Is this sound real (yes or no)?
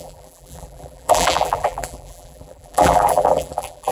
no